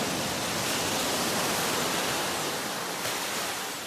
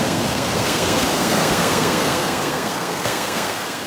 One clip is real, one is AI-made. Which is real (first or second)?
first